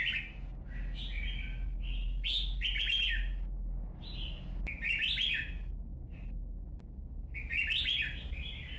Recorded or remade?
recorded